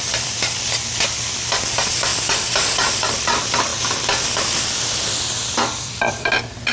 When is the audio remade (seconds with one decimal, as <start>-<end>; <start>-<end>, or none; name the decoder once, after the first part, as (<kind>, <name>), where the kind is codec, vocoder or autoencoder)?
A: 0.0-2.1 (vocoder, BigVGAN v2); 2.9-3.7; 4.4-6.7